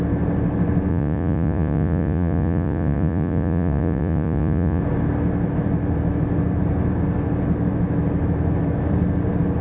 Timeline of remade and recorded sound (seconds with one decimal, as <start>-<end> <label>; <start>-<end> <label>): 0.0-0.9 recorded; 0.9-4.8 remade; 4.8-9.6 recorded